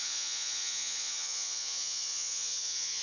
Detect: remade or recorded remade